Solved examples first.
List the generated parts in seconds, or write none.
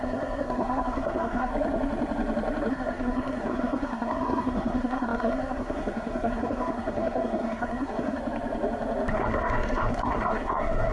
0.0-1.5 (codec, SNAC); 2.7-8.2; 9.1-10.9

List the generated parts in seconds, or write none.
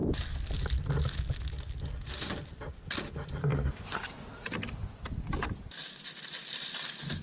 none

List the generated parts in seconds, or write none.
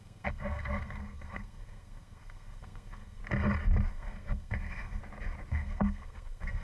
0.0-3.2 (codec, SNAC); 3.9-5.0; 5.5-6.6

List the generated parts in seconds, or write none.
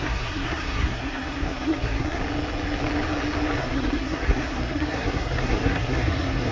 0.0-2.2 (codec, SNAC); 3.6-6.5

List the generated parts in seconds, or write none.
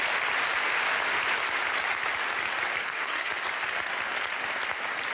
2.8-3.3 (codec, SNAC)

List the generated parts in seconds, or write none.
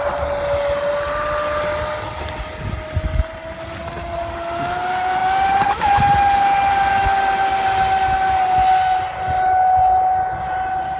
none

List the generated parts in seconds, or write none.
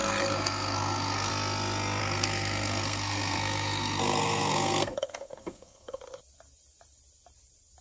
0.0-1.3 (codec, SNAC); 2.0-6.0